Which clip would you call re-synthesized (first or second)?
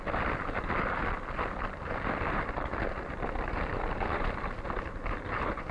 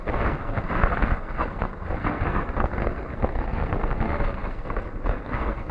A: second